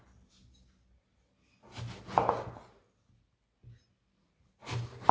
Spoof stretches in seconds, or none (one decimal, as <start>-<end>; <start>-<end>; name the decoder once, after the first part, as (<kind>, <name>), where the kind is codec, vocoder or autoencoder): none

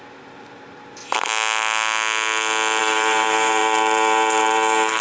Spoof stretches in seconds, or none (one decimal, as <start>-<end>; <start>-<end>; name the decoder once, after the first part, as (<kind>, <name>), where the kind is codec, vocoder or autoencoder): 0.0-1.0 (vocoder, BigVGAN v2); 2.8-5.0

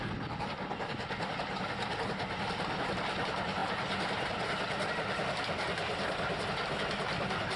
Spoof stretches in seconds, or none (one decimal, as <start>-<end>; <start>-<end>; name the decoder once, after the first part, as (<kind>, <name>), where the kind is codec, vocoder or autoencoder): none

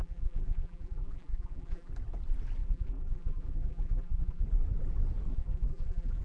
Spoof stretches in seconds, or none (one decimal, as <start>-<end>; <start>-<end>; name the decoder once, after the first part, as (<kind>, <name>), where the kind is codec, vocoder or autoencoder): 0.0-1.9 (vocoder, BigVGAN v2); 2.6-4.4; 5.3-6.2

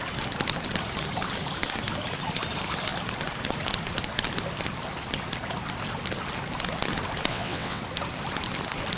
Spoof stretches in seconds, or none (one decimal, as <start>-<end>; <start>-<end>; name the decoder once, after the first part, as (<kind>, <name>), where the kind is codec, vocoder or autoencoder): 7.3-7.8 (vocoder, WaveNeXt)

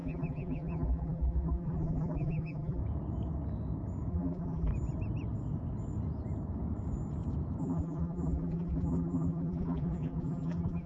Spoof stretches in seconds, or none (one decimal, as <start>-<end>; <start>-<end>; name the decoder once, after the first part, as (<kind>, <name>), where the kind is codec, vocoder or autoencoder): 0.0-2.8 (vocoder, BigVGAN v2); 4.1-4.7; 7.6-10.9